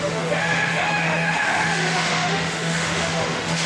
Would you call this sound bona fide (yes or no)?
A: no